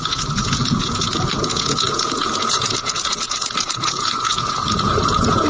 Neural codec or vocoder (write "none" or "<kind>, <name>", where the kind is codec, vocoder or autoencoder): vocoder, Vocos